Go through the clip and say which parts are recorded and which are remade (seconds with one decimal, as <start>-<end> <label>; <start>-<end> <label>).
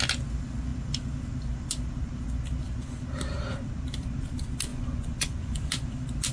0.0-4.7 recorded; 4.7-5.7 remade; 5.7-6.3 recorded